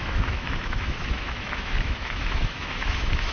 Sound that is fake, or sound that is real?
fake